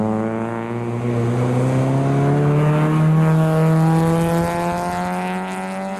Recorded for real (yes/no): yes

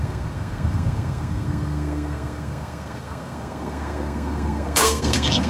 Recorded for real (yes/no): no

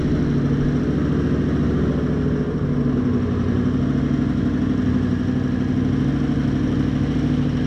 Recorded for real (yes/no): yes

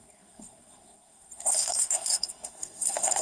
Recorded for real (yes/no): no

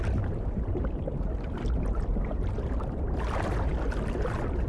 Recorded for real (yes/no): yes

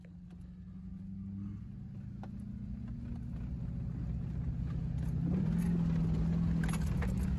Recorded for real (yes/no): yes